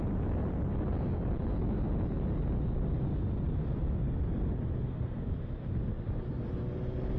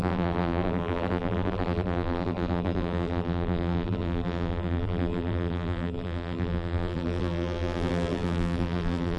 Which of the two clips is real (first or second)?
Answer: first